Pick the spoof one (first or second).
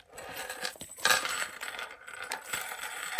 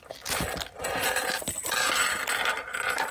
first